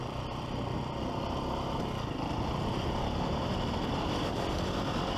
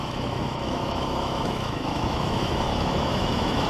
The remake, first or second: second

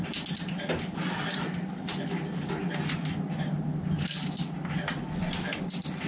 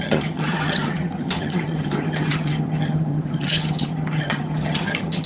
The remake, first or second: second